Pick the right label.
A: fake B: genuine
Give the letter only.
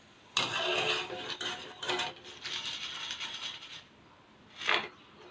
B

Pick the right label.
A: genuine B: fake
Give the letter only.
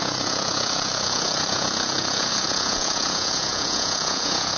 B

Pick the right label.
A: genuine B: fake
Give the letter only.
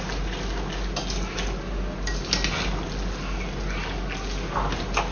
A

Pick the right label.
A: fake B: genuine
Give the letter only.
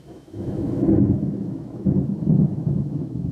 A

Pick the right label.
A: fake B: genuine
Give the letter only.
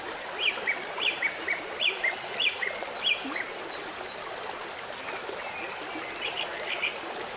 B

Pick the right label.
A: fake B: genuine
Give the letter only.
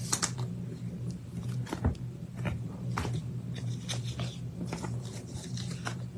B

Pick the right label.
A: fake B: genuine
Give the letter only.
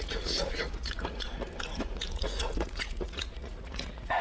A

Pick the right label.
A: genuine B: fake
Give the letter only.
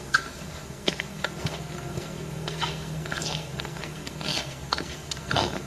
B